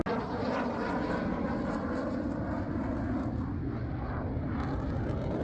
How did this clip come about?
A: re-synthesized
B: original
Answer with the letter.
B